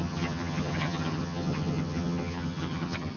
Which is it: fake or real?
fake